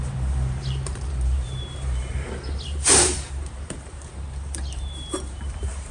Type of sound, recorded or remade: remade